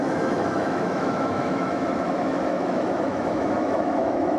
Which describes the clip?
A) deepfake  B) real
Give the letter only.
A